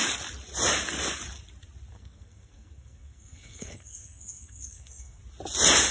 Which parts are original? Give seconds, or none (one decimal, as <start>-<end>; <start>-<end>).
0.0-1.9; 5.2-5.9